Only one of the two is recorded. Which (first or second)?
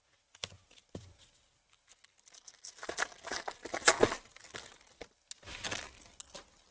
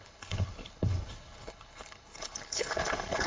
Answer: first